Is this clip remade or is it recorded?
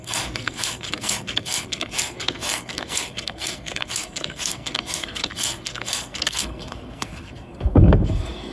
remade